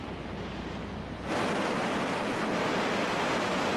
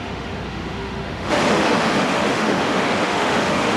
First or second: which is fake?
second